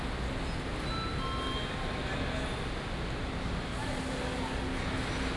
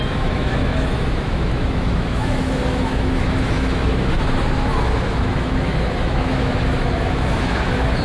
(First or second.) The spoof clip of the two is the second